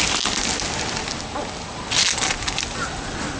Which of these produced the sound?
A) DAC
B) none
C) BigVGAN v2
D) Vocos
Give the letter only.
B